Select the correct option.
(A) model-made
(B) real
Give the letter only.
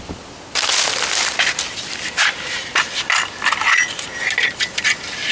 B